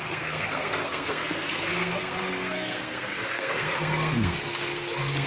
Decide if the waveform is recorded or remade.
remade